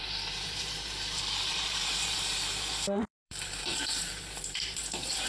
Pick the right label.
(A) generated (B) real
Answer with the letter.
A